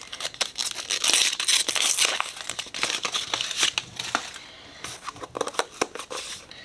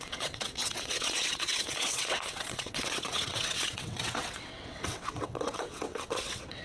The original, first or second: first